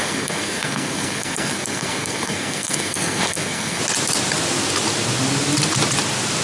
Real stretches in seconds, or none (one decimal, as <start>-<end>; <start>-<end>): 3.8-6.4